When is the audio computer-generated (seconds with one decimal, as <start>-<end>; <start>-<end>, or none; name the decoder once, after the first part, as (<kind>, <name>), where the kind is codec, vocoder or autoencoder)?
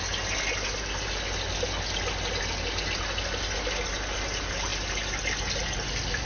none